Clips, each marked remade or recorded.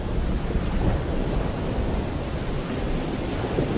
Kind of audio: recorded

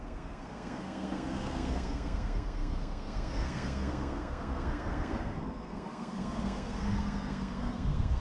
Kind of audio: remade